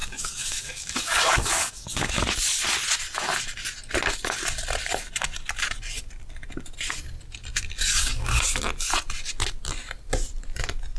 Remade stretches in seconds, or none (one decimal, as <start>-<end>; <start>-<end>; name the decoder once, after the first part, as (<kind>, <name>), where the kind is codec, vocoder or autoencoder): 0.0-2.2 (codec, DAC); 7.8-8.4